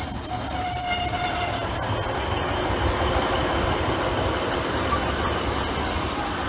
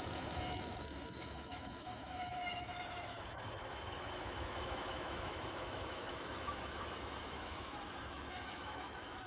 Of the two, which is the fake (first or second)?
second